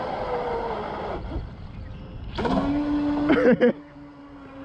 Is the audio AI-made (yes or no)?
no